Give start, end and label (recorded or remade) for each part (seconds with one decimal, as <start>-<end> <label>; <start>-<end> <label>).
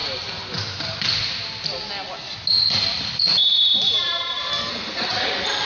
0.0-4.5 recorded; 4.5-5.1 remade; 5.1-5.6 recorded